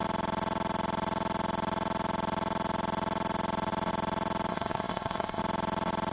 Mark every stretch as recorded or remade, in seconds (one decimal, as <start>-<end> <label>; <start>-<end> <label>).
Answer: 0.0-4.5 recorded; 4.5-5.4 remade; 5.4-6.1 recorded